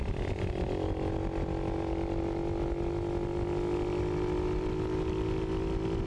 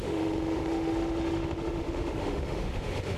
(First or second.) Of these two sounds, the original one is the first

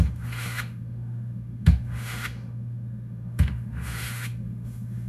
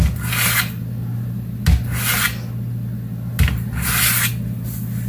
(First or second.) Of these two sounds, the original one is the second